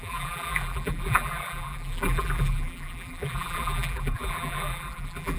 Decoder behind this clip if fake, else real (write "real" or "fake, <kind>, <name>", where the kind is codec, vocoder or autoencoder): fake, vocoder, BigVGAN v2